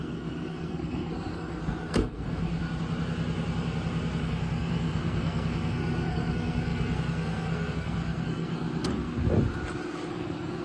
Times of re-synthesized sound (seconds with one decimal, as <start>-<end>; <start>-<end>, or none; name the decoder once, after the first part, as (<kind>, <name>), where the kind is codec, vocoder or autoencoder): 0.0-2.5 (codec, SNAC); 4.2-9.2; 10.1-10.6